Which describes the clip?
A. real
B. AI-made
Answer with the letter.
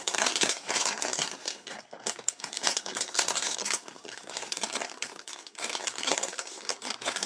B